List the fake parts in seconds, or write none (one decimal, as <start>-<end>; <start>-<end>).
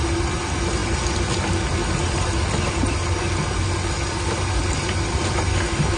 none